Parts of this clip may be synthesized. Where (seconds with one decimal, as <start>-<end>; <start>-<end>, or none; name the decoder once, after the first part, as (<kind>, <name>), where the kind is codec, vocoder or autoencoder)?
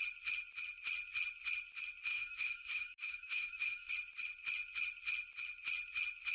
2.1-3.9 (autoencoder, DAC-VAE)